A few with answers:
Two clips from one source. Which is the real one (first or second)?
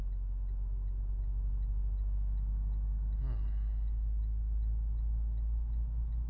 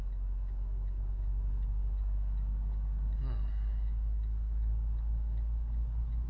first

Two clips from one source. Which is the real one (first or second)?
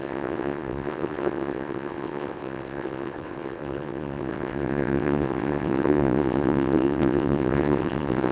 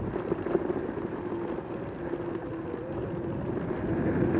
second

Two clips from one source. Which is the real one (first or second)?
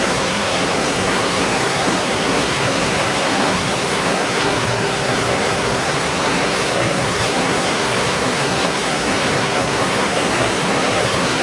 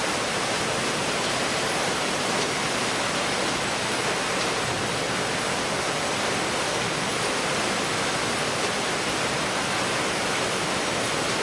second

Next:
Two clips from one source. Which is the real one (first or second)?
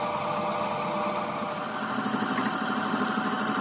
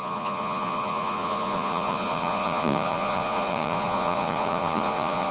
first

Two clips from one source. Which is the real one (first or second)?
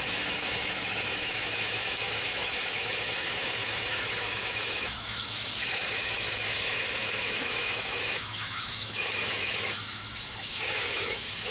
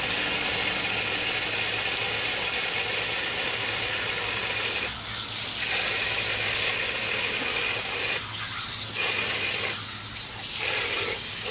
second